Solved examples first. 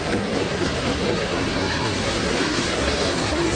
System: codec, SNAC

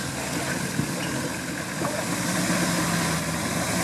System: none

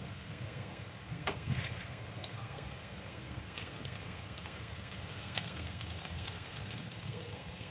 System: codec, SNAC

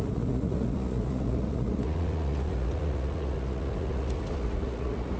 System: vocoder, Vocos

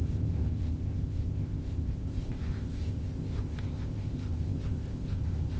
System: codec, ZipCodec